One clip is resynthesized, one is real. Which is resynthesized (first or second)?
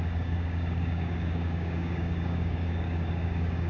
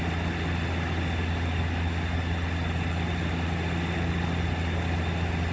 first